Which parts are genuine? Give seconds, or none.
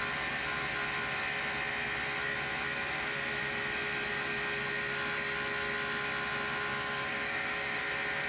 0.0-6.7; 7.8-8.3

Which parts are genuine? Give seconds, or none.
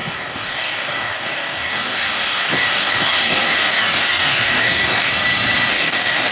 5.1-5.7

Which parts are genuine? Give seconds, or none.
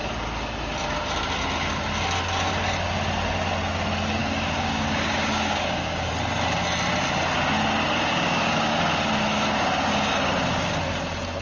0.0-4.2; 6.1-8.1; 8.8-11.4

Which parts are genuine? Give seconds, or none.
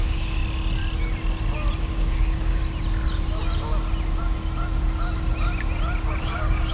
0.4-1.8; 2.6-6.2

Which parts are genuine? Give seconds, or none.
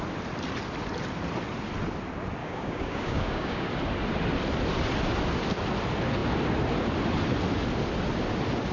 0.0-2.4; 3.7-8.7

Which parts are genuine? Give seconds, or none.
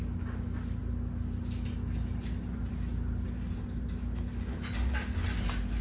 0.0-5.8